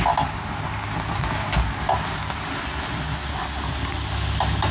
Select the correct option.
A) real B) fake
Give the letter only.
A